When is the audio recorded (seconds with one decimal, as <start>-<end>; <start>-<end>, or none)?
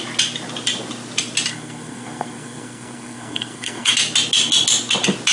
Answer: 0.0-1.5; 3.9-5.3